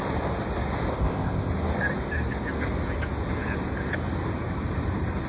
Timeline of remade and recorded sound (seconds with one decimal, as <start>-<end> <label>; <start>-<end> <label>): 0.0-0.9 recorded; 0.9-1.5 remade; 1.5-5.3 recorded